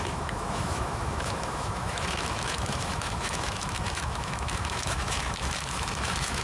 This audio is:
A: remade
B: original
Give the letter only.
A